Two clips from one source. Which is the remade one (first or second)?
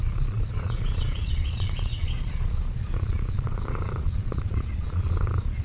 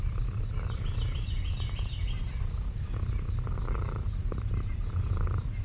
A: first